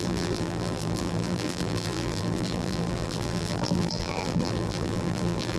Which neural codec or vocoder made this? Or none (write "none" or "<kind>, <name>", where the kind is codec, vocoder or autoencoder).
vocoder, BigVGAN v2